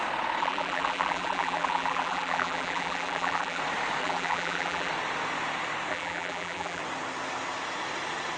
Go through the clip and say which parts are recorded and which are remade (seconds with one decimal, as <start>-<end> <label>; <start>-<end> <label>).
0.0-0.4 recorded; 0.4-3.6 remade; 3.6-4.0 recorded; 4.0-4.9 remade; 4.9-5.9 recorded; 5.9-6.8 remade; 6.8-8.4 recorded

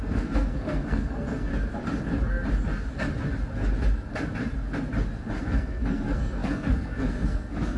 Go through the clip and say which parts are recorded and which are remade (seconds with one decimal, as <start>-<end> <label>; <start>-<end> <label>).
0.0-1.5 remade; 1.5-5.4 recorded; 5.4-7.8 remade